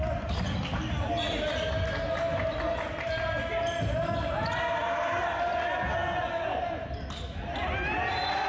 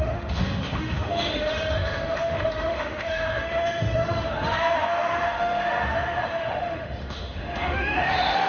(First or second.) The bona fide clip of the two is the first